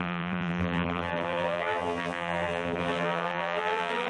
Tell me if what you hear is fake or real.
fake